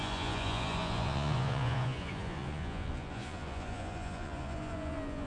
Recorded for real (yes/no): no